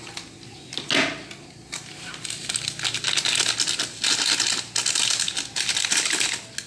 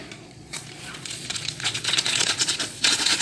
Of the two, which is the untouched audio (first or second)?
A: first